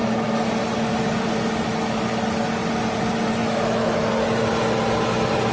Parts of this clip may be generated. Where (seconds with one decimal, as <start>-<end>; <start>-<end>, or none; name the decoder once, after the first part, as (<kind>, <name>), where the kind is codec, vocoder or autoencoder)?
3.4-4.1 (autoencoder, DAC-VAE)